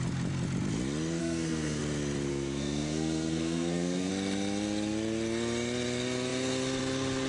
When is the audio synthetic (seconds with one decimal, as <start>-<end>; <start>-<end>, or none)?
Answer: 1.2-1.8; 2.3-4.1